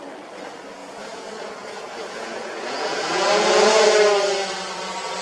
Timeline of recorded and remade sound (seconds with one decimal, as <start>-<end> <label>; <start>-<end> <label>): 0.0-0.8 recorded; 0.8-3.8 remade; 3.8-5.2 recorded